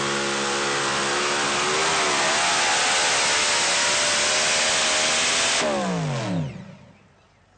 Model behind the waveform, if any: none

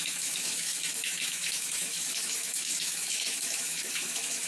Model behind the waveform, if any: autoencoder, DAC-VAE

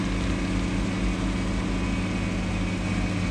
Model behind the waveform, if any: none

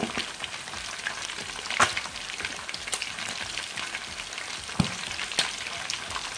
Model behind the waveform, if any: none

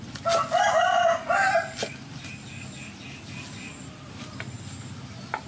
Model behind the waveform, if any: none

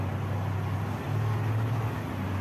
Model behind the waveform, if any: none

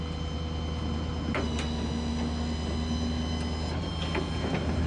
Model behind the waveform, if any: none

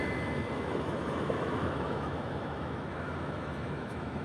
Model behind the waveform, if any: autoencoder, DAC-VAE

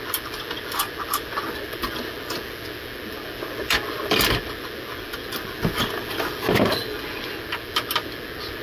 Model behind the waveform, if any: none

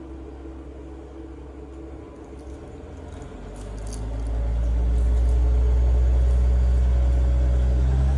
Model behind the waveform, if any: none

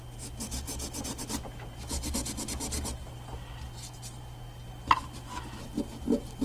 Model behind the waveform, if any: none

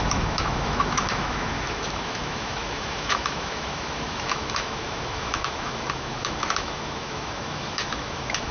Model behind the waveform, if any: autoencoder, DAC-VAE